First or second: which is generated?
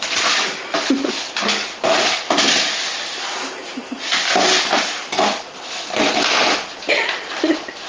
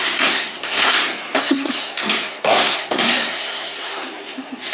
second